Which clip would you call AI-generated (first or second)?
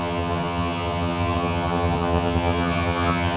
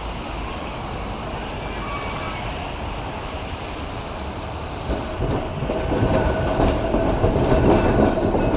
first